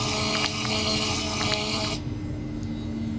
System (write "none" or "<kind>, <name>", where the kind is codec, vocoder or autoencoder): none